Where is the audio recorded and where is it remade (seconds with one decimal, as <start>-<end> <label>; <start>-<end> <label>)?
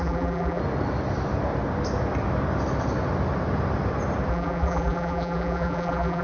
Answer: 0.0-0.6 remade; 0.6-4.3 recorded; 4.3-6.2 remade